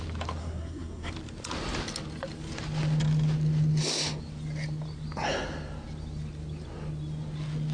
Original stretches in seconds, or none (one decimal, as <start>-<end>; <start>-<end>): 0.0-0.4; 1.1-7.7